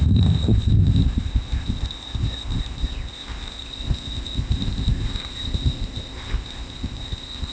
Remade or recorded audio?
remade